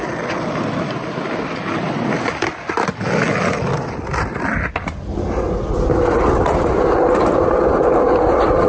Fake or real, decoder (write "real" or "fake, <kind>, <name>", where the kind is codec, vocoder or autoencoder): real